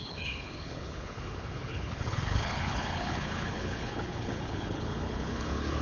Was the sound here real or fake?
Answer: fake